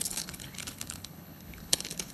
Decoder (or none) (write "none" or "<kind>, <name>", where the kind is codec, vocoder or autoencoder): codec, HILCodec